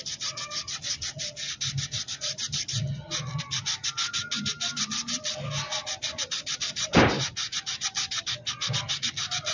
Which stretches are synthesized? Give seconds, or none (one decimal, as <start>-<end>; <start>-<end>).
6.0-7.2